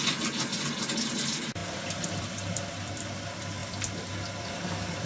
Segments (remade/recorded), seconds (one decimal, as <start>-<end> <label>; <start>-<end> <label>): 0.0-5.1 remade

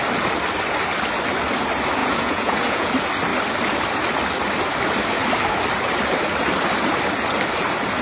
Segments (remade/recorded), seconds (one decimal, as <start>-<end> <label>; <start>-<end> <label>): 0.0-2.0 recorded; 2.0-2.9 remade; 2.9-8.0 recorded

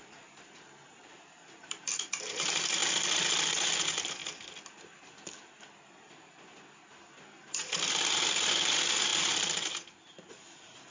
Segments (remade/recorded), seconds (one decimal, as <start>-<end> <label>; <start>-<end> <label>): 0.0-2.8 remade; 2.8-3.7 recorded; 3.7-4.2 remade; 4.2-7.9 recorded; 7.9-10.9 remade

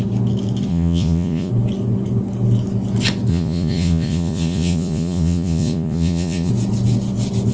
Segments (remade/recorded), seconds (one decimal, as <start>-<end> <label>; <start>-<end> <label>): 0.0-0.7 recorded; 0.7-1.5 remade; 1.5-3.3 recorded; 3.3-6.5 remade; 6.5-7.5 recorded

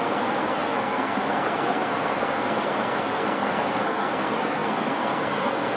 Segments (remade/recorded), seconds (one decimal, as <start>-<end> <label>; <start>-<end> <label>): 0.0-5.8 remade

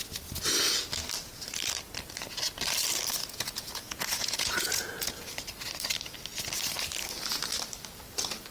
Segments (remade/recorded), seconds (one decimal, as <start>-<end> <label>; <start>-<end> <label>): 0.0-3.2 recorded; 3.2-5.3 remade; 5.3-8.5 recorded

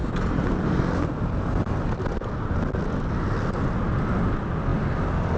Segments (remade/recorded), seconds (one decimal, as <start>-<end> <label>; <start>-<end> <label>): 0.0-5.4 recorded